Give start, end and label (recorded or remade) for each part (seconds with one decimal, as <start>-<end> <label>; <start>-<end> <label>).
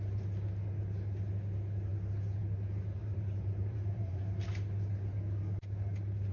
0.0-3.0 recorded; 3.0-4.2 remade; 4.2-6.3 recorded